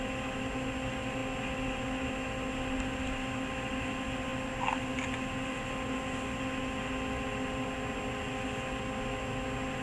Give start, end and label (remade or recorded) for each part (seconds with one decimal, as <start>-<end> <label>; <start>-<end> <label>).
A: 0.0-9.8 recorded